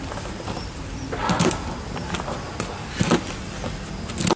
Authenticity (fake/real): real